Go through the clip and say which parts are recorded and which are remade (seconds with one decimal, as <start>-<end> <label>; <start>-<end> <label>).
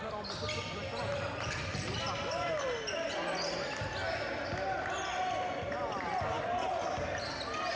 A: 0.0-7.8 recorded